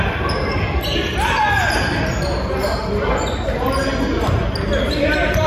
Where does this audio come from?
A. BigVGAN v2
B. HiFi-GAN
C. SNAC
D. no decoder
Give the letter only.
D